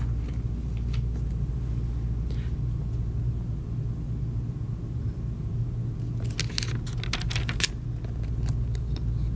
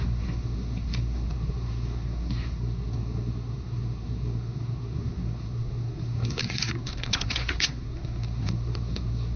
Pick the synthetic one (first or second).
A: second